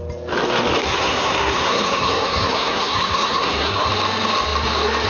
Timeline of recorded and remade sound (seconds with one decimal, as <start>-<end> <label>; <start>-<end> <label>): 0.0-0.8 recorded; 0.8-3.9 remade; 3.9-5.1 recorded